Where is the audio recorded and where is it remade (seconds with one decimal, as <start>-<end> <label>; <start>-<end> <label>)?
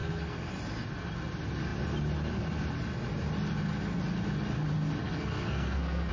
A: 0.0-0.5 remade; 0.5-5.0 recorded; 5.0-6.1 remade